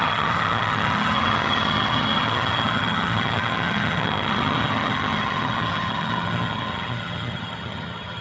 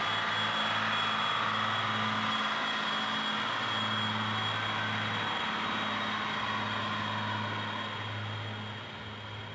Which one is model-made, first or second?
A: first